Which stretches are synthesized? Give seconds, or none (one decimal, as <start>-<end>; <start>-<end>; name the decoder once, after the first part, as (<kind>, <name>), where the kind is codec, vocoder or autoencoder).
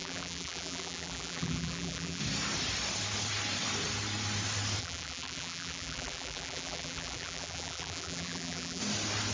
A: 0.0-2.2 (vocoder, BigVGAN v2); 4.8-8.8